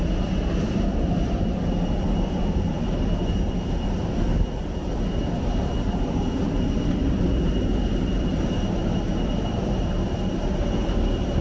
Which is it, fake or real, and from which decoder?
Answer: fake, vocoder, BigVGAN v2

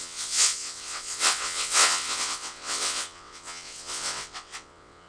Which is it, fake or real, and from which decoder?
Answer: fake, vocoder, WaveNeXt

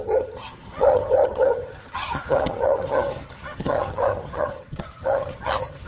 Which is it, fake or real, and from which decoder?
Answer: fake, vocoder, HiFi-GAN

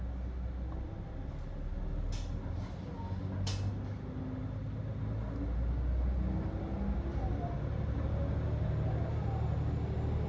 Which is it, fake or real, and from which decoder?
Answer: real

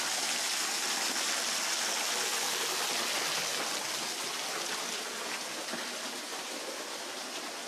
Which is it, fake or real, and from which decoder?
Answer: real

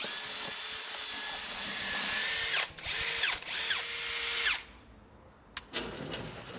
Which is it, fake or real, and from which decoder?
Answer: real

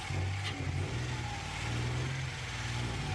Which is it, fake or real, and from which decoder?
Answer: real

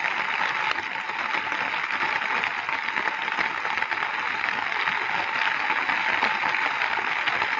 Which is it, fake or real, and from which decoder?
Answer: real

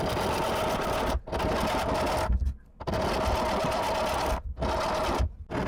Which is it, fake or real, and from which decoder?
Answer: real